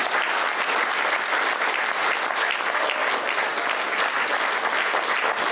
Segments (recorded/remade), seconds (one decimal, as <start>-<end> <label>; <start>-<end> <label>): 0.0-5.5 recorded